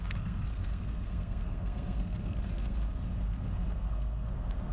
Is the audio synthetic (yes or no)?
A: yes